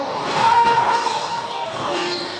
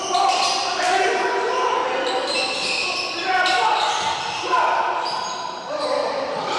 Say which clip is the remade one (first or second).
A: first